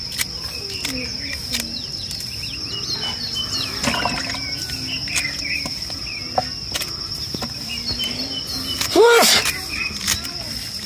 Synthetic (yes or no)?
no